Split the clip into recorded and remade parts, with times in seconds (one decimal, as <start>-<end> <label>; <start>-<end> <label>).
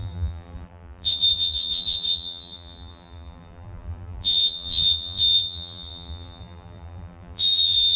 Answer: 0.0-8.0 remade